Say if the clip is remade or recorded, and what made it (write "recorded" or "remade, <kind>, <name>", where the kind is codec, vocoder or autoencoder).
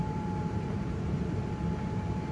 remade, vocoder, BigVGAN v2